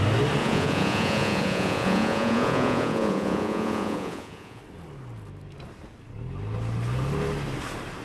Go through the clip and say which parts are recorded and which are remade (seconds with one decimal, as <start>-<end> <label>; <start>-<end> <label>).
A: 0.0-0.4 recorded; 0.4-4.6 remade; 4.6-8.0 recorded